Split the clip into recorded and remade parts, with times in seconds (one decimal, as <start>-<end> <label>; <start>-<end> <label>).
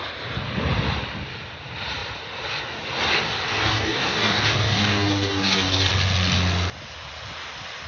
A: 0.0-3.5 recorded; 3.5-5.9 remade; 5.9-7.9 recorded